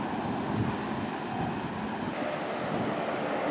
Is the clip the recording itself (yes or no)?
yes